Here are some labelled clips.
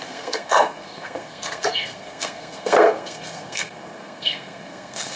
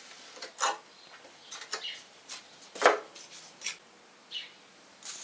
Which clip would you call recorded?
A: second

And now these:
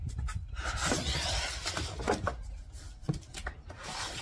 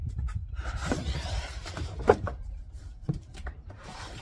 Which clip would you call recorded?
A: first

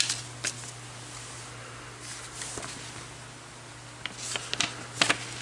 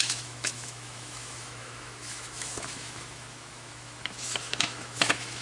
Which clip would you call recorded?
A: first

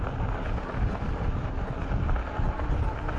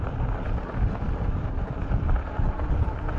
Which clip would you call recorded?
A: first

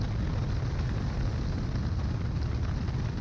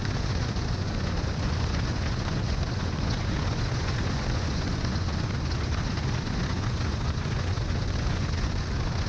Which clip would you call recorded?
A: first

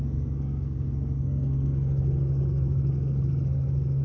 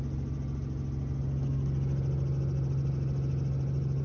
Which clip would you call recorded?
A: second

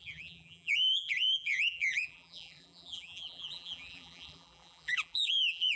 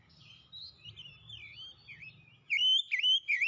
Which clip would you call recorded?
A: second